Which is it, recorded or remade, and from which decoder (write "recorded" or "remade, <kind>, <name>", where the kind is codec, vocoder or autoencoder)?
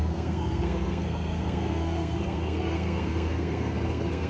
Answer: remade, codec, SNAC